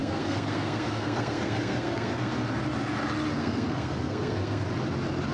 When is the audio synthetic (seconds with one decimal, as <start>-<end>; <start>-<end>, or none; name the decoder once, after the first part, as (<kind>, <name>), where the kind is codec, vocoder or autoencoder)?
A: 0.0-2.3 (codec, SNAC); 3.4-4.6